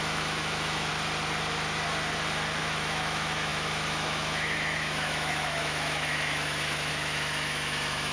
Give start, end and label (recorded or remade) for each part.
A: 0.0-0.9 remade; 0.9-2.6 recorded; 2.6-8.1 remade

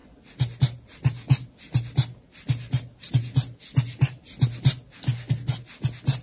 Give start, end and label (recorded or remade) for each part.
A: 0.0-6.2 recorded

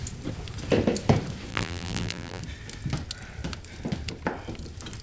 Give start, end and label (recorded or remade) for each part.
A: 0.0-1.5 recorded; 1.5-2.4 remade; 2.4-5.0 recorded

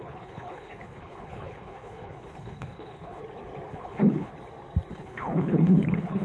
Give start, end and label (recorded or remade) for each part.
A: 0.0-3.2 remade; 3.2-3.7 recorded; 3.7-4.3 remade; 4.3-4.9 recorded; 4.9-6.2 remade

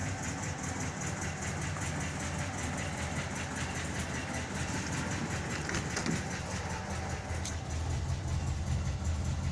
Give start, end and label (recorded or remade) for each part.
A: 0.0-9.5 recorded

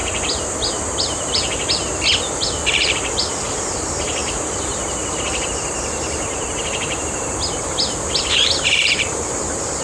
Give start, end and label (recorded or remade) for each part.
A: 0.0-1.8 remade; 1.8-2.4 recorded; 2.4-9.8 remade

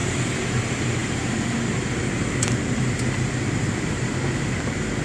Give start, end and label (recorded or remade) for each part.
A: 0.0-1.0 recorded; 1.0-4.0 remade; 4.0-5.0 recorded

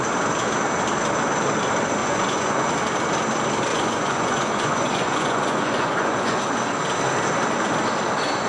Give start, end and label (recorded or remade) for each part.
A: 0.0-2.0 recorded; 2.0-2.7 remade; 2.7-3.7 recorded; 3.7-6.4 remade; 6.4-8.5 recorded